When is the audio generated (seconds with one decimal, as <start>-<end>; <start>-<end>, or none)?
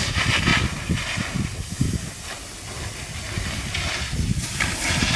none